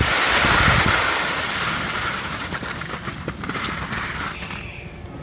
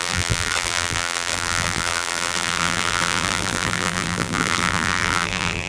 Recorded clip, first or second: first